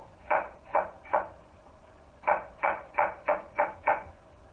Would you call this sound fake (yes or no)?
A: yes